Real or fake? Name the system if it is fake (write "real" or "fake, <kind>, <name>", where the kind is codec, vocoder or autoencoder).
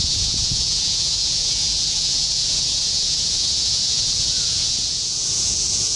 fake, vocoder, Vocos